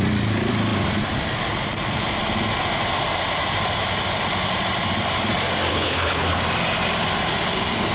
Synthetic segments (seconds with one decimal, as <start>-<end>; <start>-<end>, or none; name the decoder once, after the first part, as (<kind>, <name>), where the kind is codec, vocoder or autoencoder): 5.7-6.4 (codec, HILCodec)